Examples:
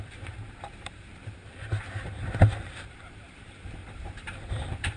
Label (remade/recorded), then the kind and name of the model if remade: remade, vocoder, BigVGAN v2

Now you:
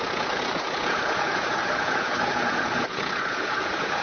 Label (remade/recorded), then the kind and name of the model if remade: remade, vocoder, Vocos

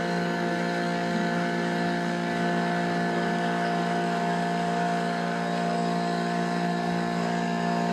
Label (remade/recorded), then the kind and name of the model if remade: remade, codec, DAC